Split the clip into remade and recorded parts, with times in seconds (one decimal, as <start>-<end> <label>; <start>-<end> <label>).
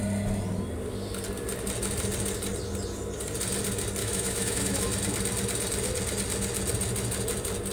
0.0-4.0 recorded; 4.0-4.8 remade; 4.8-7.7 recorded